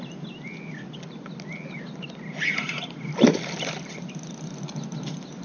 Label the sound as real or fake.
real